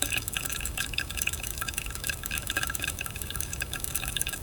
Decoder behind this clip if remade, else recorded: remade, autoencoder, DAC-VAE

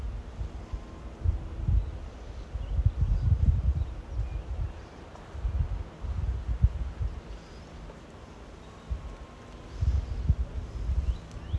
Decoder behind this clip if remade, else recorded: recorded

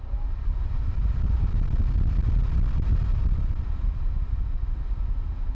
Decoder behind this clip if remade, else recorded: recorded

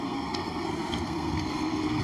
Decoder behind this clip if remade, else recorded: remade, codec, SNAC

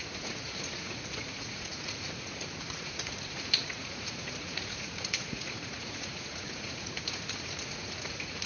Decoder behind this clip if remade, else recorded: remade, vocoder, Vocos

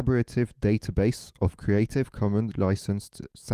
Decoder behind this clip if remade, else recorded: remade, autoencoder, DAC-VAE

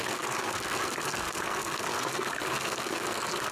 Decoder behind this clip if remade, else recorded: remade, codec, SNAC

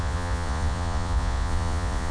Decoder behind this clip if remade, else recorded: remade, vocoder, Vocos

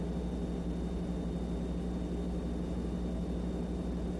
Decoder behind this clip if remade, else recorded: recorded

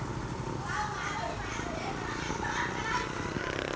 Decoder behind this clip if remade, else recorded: recorded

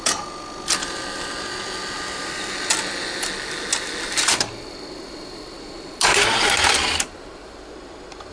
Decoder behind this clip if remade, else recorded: recorded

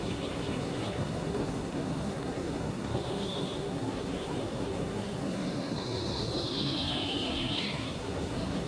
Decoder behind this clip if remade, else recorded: remade, codec, SNAC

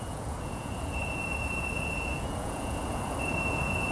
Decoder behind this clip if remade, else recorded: remade, vocoder, Vocos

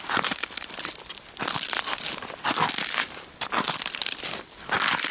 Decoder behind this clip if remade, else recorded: recorded